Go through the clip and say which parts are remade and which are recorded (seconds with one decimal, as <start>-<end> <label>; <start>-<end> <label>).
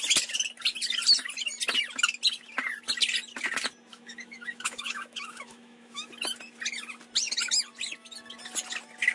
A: 0.0-3.9 recorded; 3.9-6.1 remade; 6.1-9.1 recorded